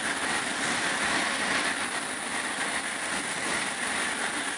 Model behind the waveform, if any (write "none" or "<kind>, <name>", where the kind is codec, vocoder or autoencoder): none